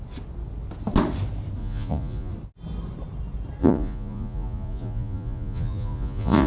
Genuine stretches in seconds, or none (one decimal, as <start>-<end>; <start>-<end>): 0.0-1.6; 2.3-3.6